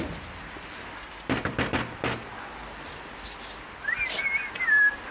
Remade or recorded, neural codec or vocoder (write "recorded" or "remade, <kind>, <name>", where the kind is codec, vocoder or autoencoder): recorded